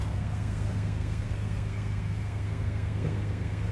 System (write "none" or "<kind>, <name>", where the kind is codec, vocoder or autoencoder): codec, SNAC